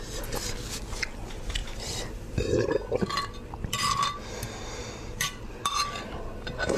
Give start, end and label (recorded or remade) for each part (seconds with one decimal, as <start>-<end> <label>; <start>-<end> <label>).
0.0-1.6 recorded; 1.6-4.3 remade; 4.3-4.8 recorded; 4.8-5.5 remade; 5.5-6.8 recorded